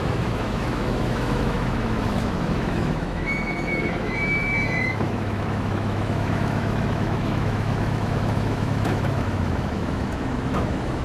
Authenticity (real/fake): fake